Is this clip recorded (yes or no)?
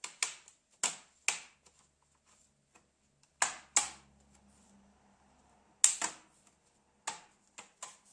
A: yes